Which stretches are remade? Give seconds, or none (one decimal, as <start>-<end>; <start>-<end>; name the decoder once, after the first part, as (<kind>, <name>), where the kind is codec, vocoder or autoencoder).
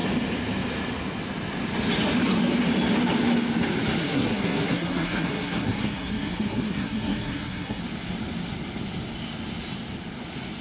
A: 4.0-7.8 (codec, SNAC)